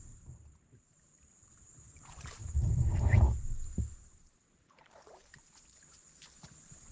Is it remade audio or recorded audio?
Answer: remade